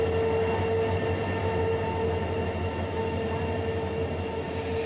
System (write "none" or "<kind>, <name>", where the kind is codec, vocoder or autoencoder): none